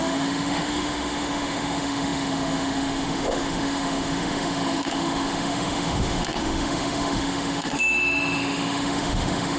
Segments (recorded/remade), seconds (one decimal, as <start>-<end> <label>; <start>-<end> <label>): 0.0-9.6 remade